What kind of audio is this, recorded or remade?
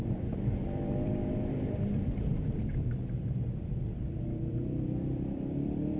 remade